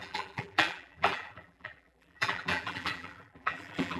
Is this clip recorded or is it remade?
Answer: remade